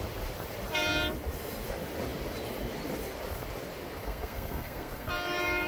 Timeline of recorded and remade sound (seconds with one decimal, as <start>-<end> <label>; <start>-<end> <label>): 0.0-4.0 recorded; 4.0-5.1 remade; 5.1-5.7 recorded